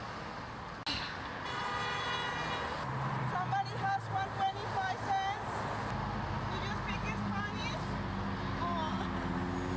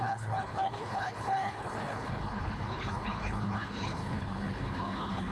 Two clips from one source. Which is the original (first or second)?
first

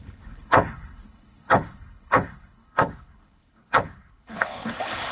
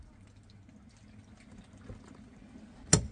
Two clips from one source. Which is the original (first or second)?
second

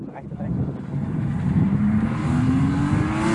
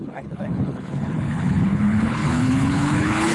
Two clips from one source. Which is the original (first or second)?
first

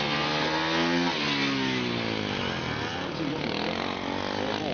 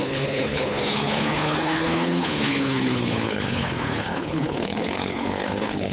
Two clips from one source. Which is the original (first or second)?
first